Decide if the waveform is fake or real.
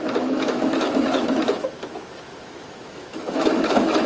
fake